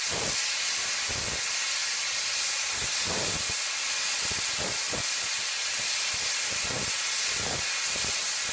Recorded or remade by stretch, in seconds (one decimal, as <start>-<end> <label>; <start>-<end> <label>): 0.0-8.5 recorded